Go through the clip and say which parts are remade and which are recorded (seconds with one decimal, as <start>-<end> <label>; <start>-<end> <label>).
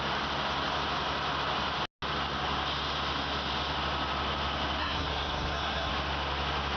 0.0-4.8 recorded; 4.8-5.9 remade; 5.9-6.8 recorded